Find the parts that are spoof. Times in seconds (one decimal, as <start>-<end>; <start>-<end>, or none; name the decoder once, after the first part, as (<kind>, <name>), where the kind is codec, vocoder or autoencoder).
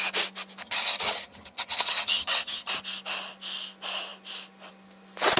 0.6-2.7 (vocoder, HiFi-GAN)